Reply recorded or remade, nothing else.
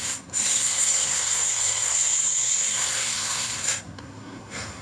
remade